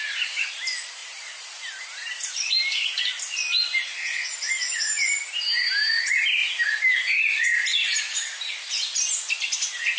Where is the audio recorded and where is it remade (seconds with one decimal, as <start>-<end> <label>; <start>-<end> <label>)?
0.0-1.0 recorded; 1.0-3.1 remade; 3.1-6.4 recorded; 6.4-8.0 remade; 8.0-10.0 recorded